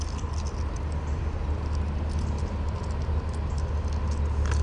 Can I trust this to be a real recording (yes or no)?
yes